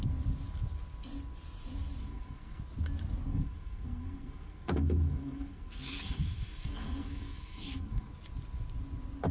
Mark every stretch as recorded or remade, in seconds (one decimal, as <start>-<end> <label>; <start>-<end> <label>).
0.0-2.0 recorded; 2.0-2.6 remade; 2.6-3.3 recorded; 3.3-8.1 remade; 8.1-9.3 recorded